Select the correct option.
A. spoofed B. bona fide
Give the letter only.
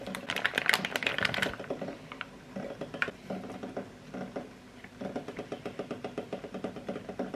B